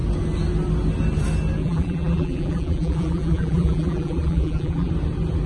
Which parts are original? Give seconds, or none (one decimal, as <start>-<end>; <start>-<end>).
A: 0.0-1.6; 4.9-5.5